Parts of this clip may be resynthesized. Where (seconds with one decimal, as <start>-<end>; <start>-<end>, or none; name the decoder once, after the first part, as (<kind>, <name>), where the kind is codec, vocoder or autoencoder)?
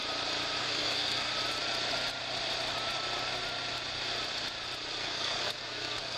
0.6-1.3 (codec, SNAC); 5.0-6.2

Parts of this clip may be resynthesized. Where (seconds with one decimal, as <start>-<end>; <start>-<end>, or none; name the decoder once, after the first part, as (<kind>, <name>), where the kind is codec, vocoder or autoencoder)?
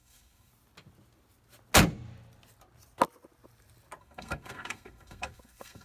0.0-0.5 (codec, SNAC); 4.0-5.8